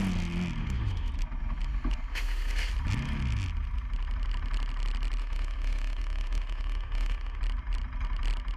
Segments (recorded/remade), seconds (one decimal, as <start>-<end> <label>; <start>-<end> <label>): 0.0-0.6 recorded; 0.6-1.1 remade; 1.1-2.1 recorded; 2.1-2.7 remade; 2.7-5.2 recorded; 5.2-7.4 remade; 7.4-8.6 recorded